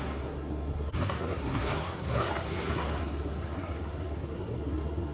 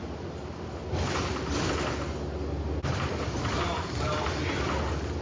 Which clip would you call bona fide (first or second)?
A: second